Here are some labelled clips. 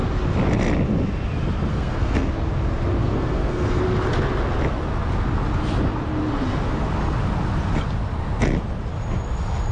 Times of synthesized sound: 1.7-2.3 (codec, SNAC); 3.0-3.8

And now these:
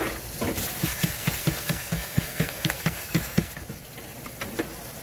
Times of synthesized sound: 0.9-3.5 (codec, SNAC)

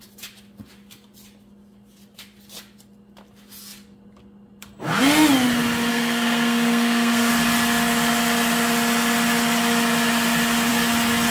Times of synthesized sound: 5.9-7.3 (codec, SNAC)

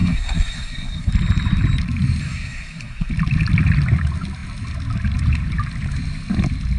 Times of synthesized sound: 0.0-1.1 (codec, SNAC); 2.2-3.1

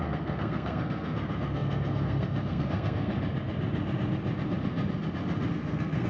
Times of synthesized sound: 0.0-3.1 (codec, SNAC); 5.5-6.1

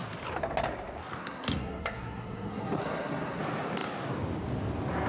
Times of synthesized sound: 1.2-3.4 (codec, SNAC)

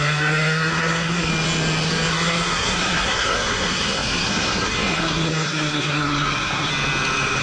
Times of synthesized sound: 0.0-1.3 (codec, SNAC); 2.1-6.7

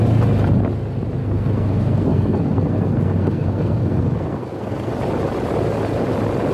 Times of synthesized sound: 1.2-4.9 (codec, SNAC)